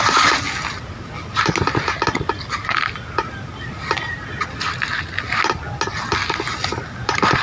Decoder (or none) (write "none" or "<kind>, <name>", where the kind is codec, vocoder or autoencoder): none